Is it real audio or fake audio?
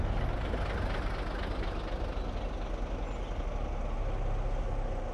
real